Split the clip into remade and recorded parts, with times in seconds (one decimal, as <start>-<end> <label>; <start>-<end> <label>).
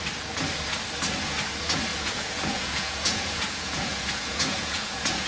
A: 0.0-1.9 recorded; 1.9-5.3 remade